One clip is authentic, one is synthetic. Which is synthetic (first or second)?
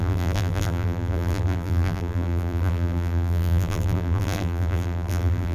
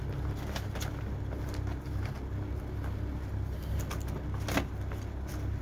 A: first